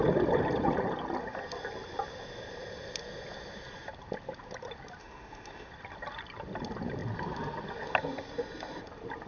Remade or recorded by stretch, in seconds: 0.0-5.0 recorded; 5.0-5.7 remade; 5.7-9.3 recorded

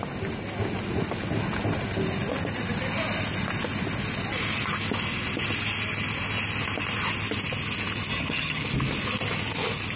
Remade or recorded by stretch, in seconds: 0.0-8.1 recorded; 8.1-8.6 remade; 8.6-10.0 recorded

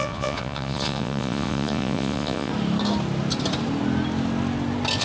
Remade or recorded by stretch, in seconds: 0.0-2.5 remade; 2.5-5.0 recorded

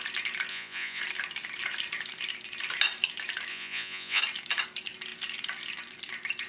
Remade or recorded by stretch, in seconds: 0.0-0.5 recorded; 0.5-1.0 remade; 1.0-3.5 recorded; 3.5-4.2 remade; 4.2-6.5 recorded

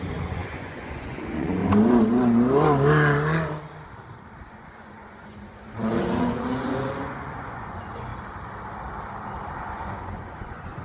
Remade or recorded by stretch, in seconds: 0.0-1.6 remade; 1.6-4.5 recorded; 4.5-8.1 remade; 8.1-9.6 recorded; 9.6-10.8 remade

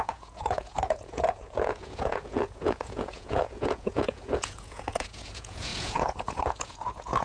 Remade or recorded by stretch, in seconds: 0.0-7.2 remade

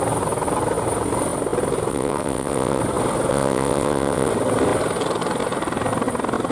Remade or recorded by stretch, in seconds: 0.0-1.9 recorded; 1.9-2.8 remade; 2.8-3.3 recorded; 3.3-4.3 remade; 4.3-6.5 recorded

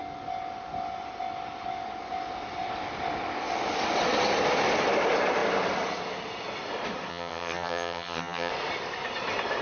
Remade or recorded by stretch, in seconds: 0.0-7.1 recorded; 7.1-8.5 remade; 8.5-9.6 recorded